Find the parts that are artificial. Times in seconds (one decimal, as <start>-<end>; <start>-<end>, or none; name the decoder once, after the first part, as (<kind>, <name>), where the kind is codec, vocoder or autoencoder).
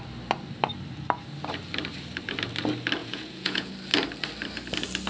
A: 3.0-3.7 (vocoder, Vocos)